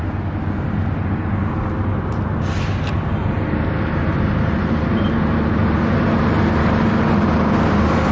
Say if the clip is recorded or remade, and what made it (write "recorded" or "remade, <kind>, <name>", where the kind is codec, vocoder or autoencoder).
recorded